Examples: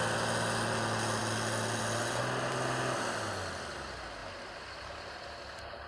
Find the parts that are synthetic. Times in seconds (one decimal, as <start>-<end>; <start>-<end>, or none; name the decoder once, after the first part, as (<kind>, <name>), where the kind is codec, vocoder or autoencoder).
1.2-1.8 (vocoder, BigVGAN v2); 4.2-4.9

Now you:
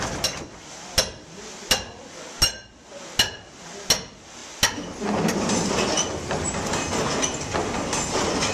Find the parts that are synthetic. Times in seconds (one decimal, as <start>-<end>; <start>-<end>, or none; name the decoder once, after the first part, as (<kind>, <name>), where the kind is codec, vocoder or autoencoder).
none

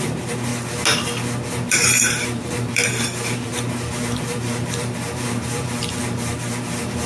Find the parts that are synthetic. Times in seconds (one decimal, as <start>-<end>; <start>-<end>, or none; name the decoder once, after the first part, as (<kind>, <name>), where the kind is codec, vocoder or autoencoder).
0.0-0.5 (vocoder, BigVGAN v2); 1.5-7.1

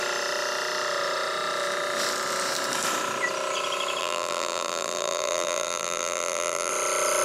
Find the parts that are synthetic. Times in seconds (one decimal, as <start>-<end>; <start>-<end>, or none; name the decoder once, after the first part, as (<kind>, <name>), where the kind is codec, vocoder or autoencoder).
4.0-6.7 (vocoder, BigVGAN v2)